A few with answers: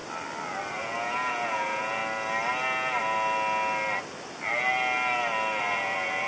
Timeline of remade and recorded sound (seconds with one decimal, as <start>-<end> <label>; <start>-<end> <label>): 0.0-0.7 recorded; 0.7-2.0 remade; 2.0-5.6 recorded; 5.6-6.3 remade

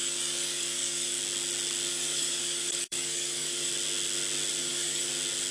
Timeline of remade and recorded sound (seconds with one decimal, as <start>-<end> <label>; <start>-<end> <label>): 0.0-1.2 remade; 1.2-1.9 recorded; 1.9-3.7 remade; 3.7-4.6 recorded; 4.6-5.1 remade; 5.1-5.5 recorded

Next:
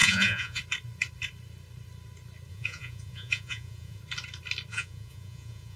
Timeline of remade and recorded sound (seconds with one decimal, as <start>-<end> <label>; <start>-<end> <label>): 0.0-0.6 remade; 0.6-2.5 recorded; 2.5-4.0 remade; 4.0-4.7 recorded; 4.7-5.8 remade

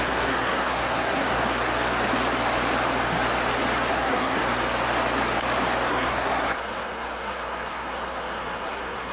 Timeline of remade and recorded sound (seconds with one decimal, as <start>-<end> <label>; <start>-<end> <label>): 0.0-1.4 remade; 1.4-3.9 recorded; 3.9-4.4 remade; 4.4-5.9 recorded; 5.9-9.1 remade